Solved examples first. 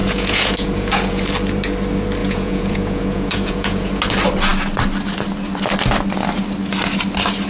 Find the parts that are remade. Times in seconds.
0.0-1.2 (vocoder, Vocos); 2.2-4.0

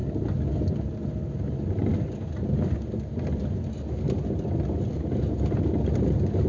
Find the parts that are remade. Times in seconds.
none

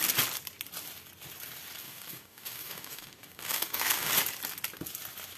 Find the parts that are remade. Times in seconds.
1.8-4.1 (codec, DAC)

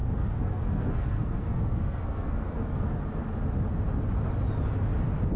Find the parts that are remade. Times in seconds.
0.0-3.0 (codec, SNAC)

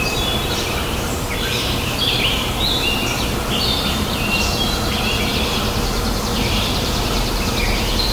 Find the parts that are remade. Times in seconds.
0.0-5.3 (vocoder, BigVGAN v2); 6.3-8.1

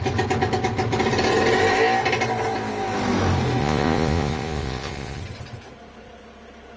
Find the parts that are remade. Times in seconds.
3.6-5.2 (vocoder, Vocos)

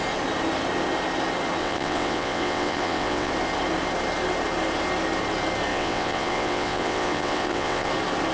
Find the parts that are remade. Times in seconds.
1.6-3.3 (vocoder, WaveNeXt); 5.7-7.9